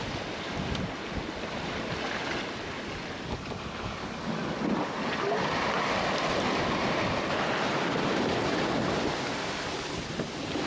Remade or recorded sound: recorded